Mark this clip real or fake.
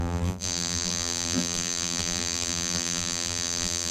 fake